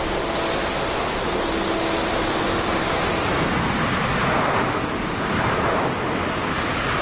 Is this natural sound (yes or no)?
yes